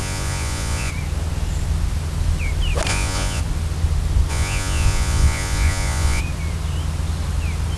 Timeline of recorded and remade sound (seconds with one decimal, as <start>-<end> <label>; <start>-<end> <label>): 0.0-0.9 remade; 0.9-2.9 recorded; 2.9-3.4 remade; 3.4-4.3 recorded; 4.3-6.2 remade; 6.2-7.8 recorded